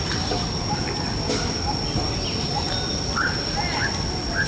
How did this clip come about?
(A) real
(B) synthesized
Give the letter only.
A